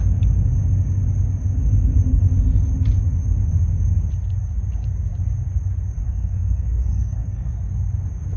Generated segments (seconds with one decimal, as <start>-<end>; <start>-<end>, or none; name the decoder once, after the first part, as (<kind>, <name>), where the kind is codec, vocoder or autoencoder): 6.0-7.5 (codec, SNAC)